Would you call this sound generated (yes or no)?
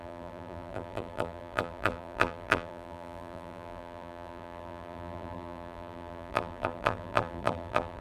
yes